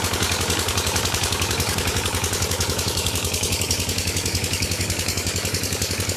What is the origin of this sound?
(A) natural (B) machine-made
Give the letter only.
B